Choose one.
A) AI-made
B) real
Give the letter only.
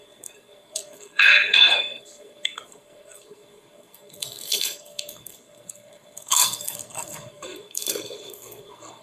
A